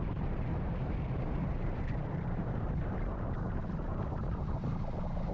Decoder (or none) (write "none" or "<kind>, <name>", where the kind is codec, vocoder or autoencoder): vocoder, BigVGAN v2